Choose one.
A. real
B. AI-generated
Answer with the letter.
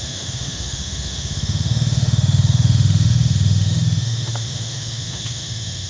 B